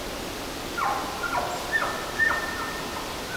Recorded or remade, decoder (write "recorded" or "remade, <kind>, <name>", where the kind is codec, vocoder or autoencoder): recorded